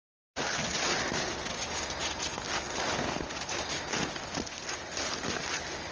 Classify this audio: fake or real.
real